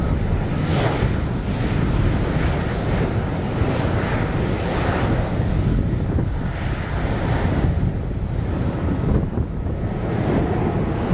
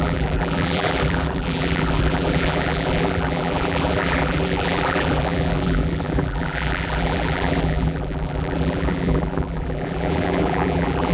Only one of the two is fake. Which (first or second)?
second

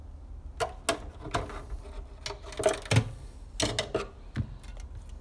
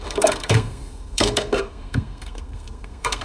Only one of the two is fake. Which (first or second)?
second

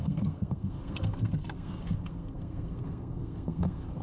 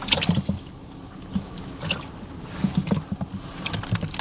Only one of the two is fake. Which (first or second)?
first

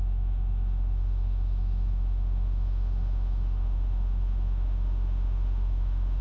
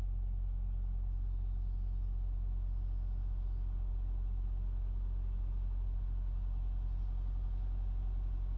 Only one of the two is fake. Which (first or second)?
first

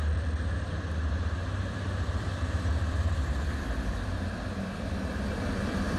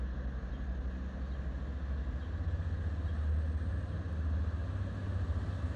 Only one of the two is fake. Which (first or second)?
first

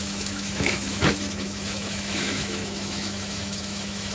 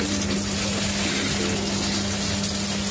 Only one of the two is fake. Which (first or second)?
first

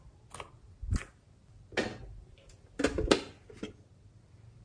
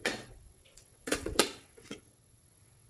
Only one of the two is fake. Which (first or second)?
second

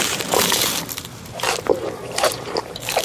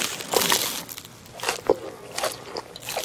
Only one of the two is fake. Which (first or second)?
first